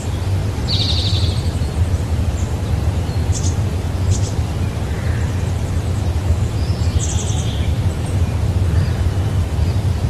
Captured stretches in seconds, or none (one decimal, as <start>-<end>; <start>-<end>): none

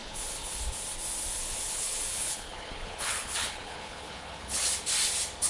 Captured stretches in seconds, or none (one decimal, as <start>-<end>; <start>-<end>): 0.6-1.3; 4.6-5.5

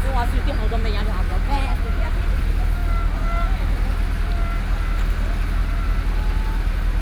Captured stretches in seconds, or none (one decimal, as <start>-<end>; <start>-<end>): 0.0-1.3; 2.4-7.0

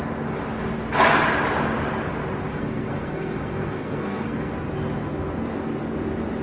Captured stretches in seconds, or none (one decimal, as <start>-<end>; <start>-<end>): 0.0-2.5; 4.5-6.4